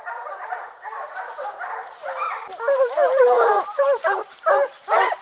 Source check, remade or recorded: remade